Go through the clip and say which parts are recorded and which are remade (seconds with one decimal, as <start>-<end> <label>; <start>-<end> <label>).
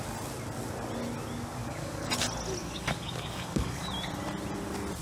0.0-1.6 recorded; 1.6-2.1 remade; 2.1-2.6 recorded; 2.6-3.9 remade; 3.9-5.0 recorded